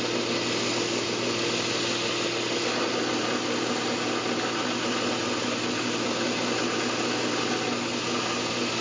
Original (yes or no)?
yes